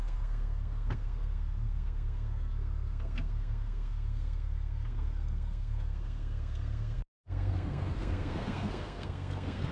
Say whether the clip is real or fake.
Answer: fake